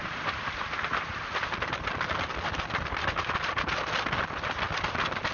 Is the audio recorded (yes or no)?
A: yes